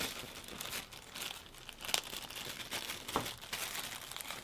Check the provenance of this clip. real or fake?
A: real